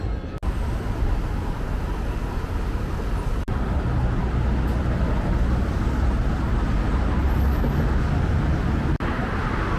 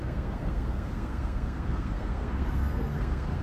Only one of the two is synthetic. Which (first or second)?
second